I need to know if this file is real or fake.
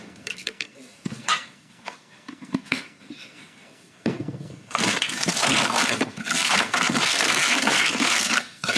fake